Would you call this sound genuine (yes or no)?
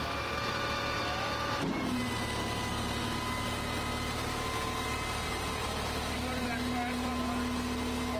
yes